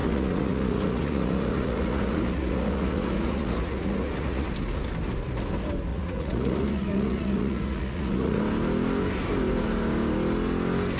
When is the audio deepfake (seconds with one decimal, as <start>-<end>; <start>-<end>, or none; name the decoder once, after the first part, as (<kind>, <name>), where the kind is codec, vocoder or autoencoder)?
0.0-4.5 (vocoder, Vocos); 5.9-8.4